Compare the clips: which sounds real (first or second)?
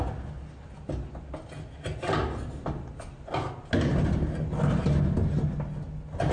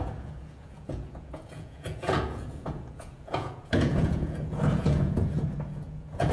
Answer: first